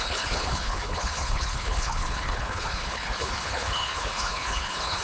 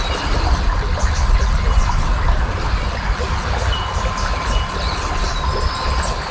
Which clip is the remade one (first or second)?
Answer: first